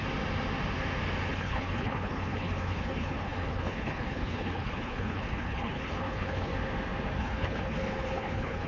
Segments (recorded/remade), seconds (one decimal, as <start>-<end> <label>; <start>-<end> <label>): 0.0-1.3 recorded; 1.3-6.5 remade; 6.5-7.2 recorded; 7.2-8.7 remade